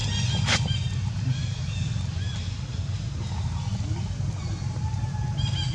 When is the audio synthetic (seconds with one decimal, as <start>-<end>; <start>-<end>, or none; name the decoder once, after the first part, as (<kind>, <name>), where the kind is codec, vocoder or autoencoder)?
none